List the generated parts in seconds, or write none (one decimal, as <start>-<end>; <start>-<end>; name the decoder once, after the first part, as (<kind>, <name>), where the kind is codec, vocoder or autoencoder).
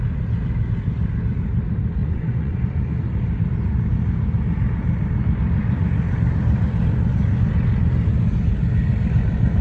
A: 2.0-2.9 (vocoder, Vocos)